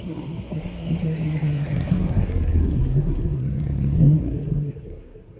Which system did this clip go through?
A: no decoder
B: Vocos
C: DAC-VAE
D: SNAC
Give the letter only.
D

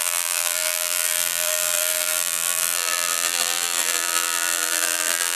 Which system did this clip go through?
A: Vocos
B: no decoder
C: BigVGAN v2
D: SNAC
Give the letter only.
C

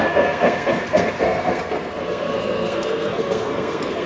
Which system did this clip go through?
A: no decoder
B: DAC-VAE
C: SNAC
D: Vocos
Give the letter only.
C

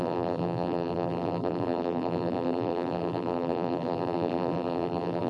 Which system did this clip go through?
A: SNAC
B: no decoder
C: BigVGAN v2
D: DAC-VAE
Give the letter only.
C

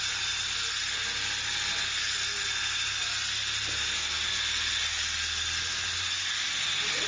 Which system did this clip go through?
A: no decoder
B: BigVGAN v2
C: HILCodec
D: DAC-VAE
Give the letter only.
A